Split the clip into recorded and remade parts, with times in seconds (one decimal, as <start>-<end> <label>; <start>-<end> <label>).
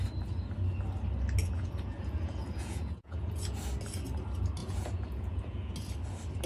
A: 0.0-1.4 recorded; 1.4-3.6 remade; 3.6-4.6 recorded; 4.6-5.7 remade; 5.7-6.5 recorded